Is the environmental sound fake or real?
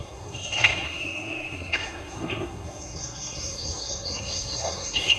fake